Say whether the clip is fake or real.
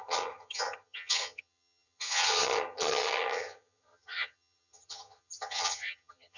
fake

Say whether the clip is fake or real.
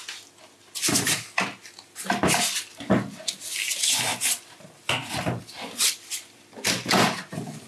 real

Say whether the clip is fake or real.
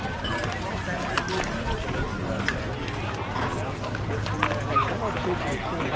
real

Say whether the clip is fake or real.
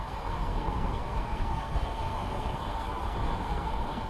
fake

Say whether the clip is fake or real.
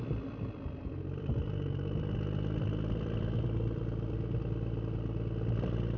fake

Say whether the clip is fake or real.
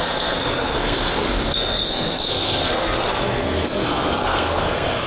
fake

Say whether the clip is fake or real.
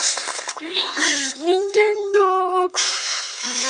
fake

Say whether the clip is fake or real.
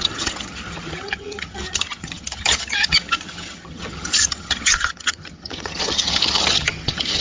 fake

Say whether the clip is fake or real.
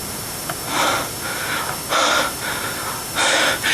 real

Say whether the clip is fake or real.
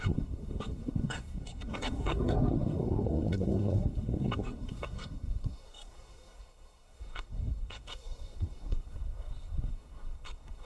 fake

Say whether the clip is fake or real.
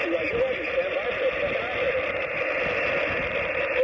real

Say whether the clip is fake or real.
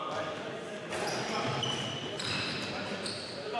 real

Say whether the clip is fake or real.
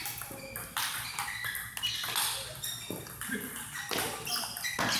real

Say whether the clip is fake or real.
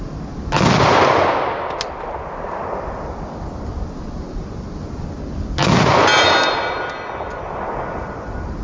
real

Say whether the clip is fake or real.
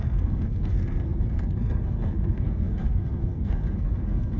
fake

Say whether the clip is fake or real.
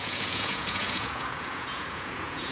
fake